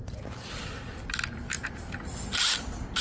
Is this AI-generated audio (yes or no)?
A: no